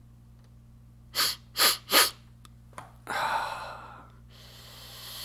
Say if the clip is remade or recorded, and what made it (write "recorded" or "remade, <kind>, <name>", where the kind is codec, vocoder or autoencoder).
recorded